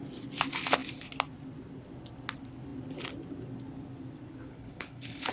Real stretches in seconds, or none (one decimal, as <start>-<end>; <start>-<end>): 0.0-4.5